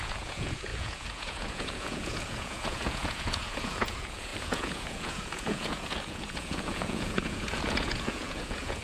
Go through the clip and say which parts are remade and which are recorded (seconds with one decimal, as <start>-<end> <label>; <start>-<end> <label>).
0.0-8.8 remade